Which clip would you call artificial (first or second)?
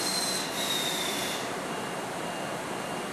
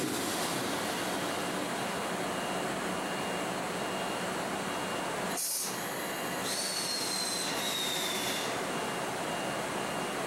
first